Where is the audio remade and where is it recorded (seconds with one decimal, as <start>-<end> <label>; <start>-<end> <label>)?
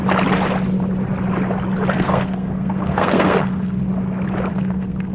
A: 0.0-1.9 recorded; 1.9-3.8 remade; 3.8-4.5 recorded; 4.5-5.1 remade